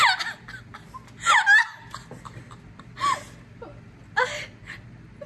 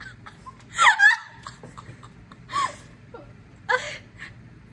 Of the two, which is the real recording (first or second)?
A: first